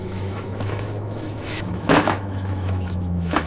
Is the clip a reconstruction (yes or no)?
yes